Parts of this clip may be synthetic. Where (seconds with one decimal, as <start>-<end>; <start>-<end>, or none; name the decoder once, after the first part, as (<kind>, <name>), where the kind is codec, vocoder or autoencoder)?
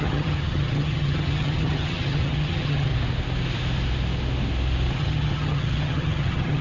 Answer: 0.0-2.9 (vocoder, HiFi-GAN); 4.9-6.6